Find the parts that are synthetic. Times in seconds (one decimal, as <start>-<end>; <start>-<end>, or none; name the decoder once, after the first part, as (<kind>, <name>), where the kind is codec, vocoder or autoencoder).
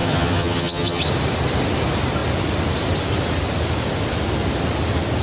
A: 0.0-1.0 (vocoder, HiFi-GAN)